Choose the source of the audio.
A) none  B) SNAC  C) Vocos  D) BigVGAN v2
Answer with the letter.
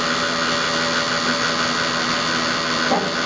A